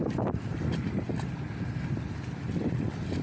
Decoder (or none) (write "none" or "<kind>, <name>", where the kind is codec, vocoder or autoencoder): vocoder, BigVGAN v2